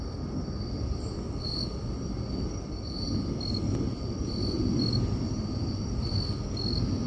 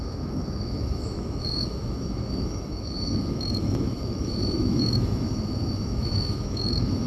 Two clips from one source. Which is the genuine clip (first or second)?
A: first